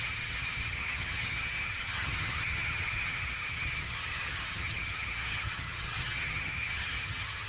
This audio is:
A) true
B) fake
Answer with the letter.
B